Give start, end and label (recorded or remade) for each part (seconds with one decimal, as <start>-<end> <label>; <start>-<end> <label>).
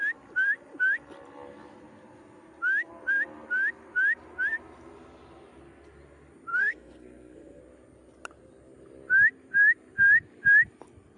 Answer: 0.0-6.5 recorded; 6.5-7.6 remade; 7.6-11.2 recorded